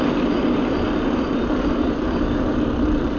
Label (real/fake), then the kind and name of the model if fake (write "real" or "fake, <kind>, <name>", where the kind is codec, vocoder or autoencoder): real